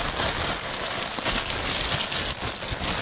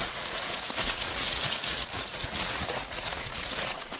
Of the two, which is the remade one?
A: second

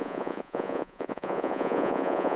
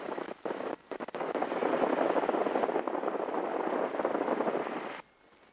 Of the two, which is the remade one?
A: first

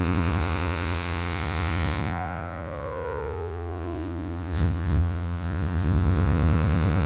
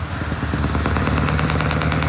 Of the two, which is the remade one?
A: first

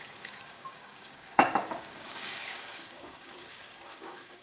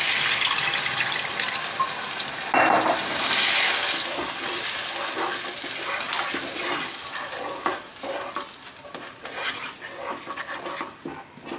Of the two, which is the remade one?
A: first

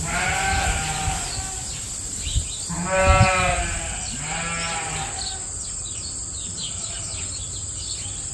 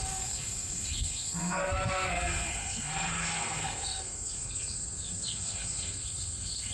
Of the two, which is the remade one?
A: second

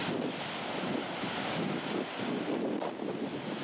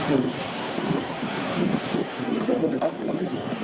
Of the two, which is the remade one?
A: second